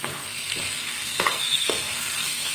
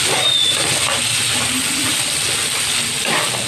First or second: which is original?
second